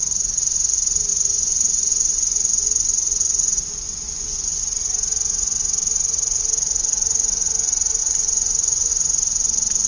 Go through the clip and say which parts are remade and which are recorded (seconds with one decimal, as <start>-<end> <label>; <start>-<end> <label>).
0.0-1.1 recorded; 1.1-4.6 remade; 4.6-8.0 recorded; 8.0-8.9 remade; 8.9-9.9 recorded